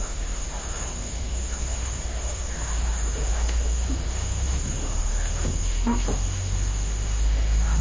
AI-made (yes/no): yes